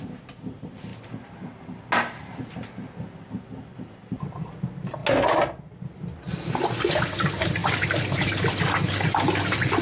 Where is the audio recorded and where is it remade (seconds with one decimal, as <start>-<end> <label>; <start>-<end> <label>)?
0.0-9.8 recorded